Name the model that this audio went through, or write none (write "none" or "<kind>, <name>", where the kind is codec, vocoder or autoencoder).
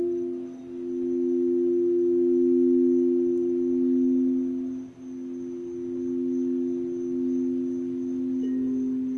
none